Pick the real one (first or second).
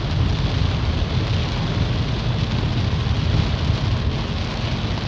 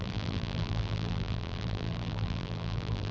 first